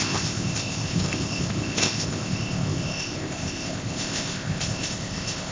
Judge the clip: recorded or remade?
remade